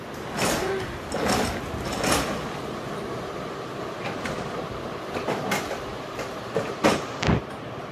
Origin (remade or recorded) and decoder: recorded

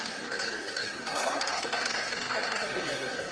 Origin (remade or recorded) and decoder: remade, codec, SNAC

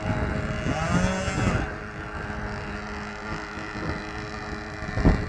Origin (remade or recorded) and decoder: recorded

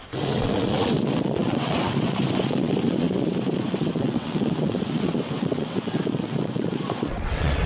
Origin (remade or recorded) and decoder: remade, vocoder, WaveNeXt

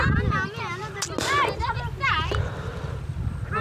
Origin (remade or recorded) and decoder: recorded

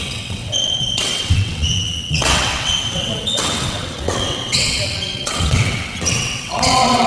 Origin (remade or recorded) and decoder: remade, vocoder, WaveNeXt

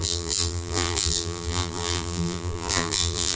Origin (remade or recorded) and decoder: remade, vocoder, BigVGAN v2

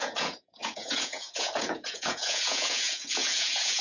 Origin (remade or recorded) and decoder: remade, vocoder, Vocos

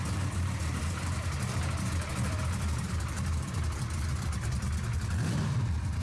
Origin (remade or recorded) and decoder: remade, vocoder, BigVGAN v2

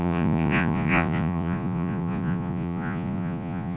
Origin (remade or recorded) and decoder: remade, vocoder, Vocos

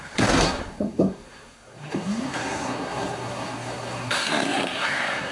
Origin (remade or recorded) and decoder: remade, codec, SNAC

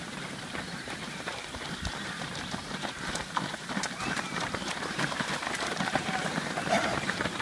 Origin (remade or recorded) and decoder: remade, vocoder, BigVGAN v2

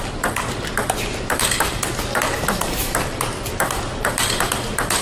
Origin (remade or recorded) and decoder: remade, vocoder, BigVGAN v2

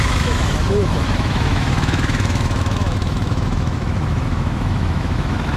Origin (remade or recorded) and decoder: remade, autoencoder, DAC-VAE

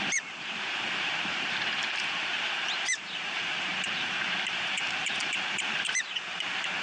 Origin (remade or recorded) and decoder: remade, vocoder, BigVGAN v2